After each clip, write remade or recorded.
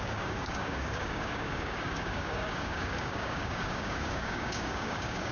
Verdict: remade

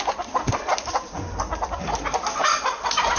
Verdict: recorded